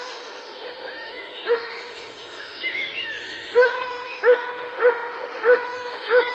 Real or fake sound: fake